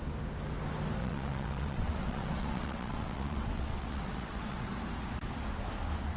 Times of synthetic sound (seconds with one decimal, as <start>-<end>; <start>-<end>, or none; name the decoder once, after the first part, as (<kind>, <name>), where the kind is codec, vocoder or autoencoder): 1.0-4.7 (vocoder, WaveNeXt)